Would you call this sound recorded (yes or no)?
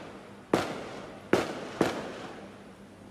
yes